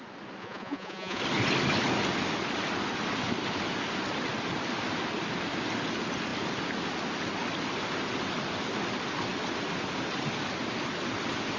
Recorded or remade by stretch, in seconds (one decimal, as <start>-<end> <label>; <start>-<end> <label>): 0.0-0.4 recorded; 0.4-1.2 remade; 1.2-11.6 recorded